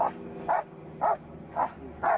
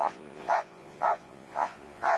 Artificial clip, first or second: second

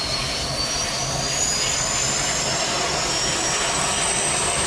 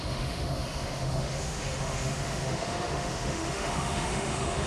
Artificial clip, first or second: second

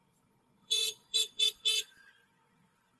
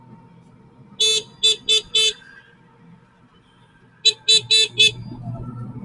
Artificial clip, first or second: first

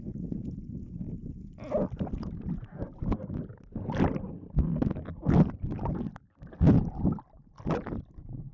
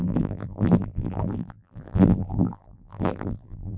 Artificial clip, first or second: second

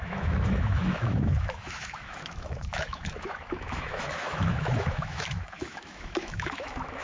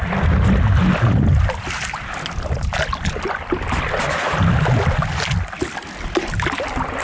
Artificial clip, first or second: first